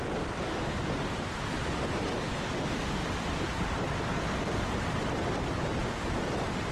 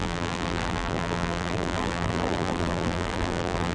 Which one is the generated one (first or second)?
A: second